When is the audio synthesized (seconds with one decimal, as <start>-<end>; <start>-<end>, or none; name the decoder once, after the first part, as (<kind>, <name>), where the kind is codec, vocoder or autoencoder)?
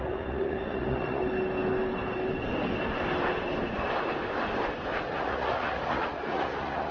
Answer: 0.0-1.2 (vocoder, Vocos); 5.1-6.9